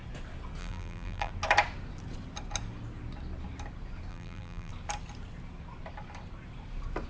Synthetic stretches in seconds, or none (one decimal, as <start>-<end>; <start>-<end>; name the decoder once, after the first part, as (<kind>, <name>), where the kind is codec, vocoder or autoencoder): 0.6-1.3 (vocoder, BigVGAN v2); 4.1-4.7